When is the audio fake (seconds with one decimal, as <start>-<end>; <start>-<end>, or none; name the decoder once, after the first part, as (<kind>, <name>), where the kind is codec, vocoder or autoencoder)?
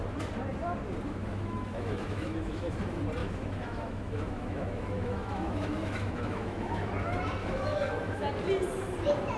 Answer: 1.2-2.8 (autoencoder, DAC-VAE); 3.2-6.9; 7.4-8.3